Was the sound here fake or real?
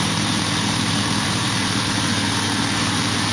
fake